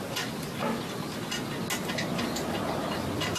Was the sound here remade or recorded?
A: recorded